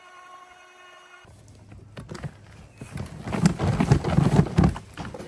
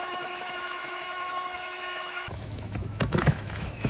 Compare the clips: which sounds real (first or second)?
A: first